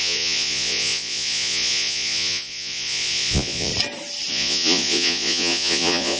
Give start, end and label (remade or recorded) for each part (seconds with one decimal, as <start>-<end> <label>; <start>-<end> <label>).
0.0-3.7 remade; 3.7-4.3 recorded; 4.3-6.2 remade